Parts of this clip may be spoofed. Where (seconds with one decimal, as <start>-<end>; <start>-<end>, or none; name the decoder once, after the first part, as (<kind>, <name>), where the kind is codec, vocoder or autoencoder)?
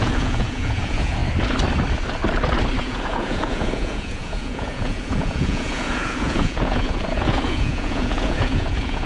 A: 0.0-1.2 (vocoder, Vocos); 2.8-9.1